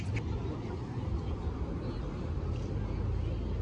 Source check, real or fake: real